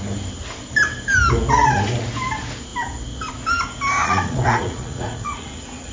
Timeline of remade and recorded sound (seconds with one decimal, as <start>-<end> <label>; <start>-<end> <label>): 0.0-4.0 recorded; 4.0-5.9 remade

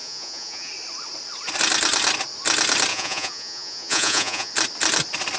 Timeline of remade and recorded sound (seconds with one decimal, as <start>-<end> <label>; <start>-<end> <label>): 0.0-0.7 remade; 0.7-2.9 recorded; 2.9-4.5 remade; 4.5-5.4 recorded